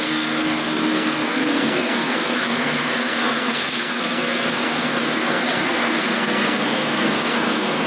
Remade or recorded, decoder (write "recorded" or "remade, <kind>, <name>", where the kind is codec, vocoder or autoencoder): remade, codec, SNAC